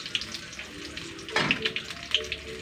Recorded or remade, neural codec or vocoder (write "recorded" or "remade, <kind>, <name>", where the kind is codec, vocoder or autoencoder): recorded